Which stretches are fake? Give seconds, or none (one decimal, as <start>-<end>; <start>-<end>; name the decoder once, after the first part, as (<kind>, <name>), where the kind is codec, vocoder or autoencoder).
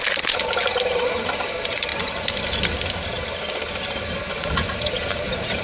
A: 0.0-1.9 (vocoder, BigVGAN v2); 4.9-5.6